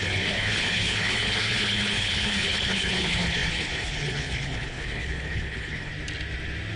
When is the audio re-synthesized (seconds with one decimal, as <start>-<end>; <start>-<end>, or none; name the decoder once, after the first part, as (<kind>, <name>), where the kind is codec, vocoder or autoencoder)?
0.0-5.9 (codec, HILCodec)